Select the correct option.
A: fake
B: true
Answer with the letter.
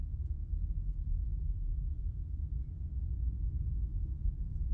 A